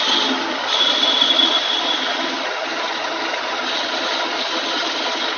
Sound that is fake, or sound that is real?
real